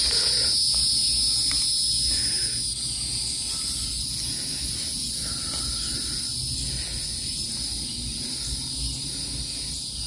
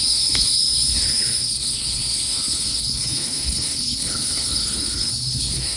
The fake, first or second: second